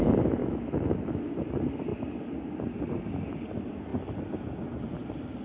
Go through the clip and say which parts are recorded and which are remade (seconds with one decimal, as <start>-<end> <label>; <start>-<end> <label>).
0.0-0.4 recorded; 0.4-1.3 remade; 1.3-5.4 recorded